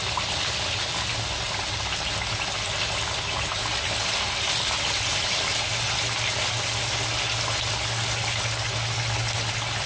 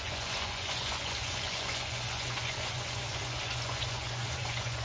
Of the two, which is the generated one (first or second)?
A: second